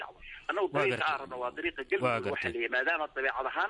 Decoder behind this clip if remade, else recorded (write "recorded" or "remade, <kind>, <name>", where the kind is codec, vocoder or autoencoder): recorded